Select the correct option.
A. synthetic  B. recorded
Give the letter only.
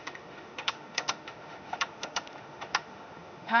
A